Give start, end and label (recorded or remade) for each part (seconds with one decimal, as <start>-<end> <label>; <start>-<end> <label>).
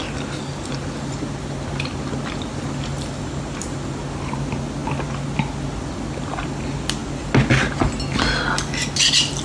0.0-9.4 recorded